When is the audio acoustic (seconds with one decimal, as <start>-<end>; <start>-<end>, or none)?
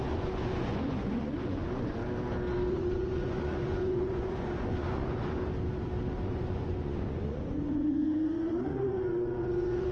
2.0-2.7; 5.4-6.3